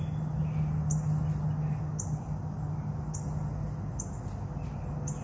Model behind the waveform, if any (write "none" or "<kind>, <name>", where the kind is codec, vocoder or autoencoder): none